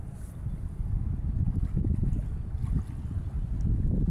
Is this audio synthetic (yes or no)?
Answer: no